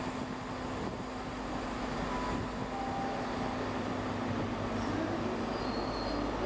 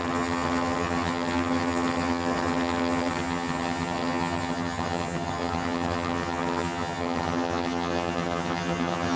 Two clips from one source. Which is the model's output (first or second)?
second